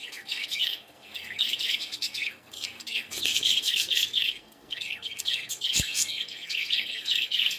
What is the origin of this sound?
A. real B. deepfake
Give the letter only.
B